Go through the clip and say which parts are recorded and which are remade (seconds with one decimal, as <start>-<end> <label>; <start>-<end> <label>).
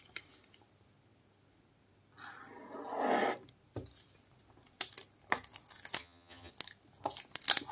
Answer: 0.0-6.0 recorded; 6.0-6.5 remade; 6.5-7.7 recorded